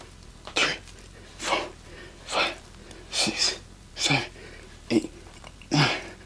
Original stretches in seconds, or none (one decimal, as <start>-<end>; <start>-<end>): 0.0-6.3